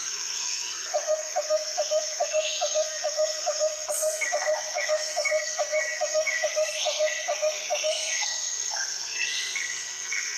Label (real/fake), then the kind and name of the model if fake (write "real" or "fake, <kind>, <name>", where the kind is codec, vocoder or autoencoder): fake, codec, SNAC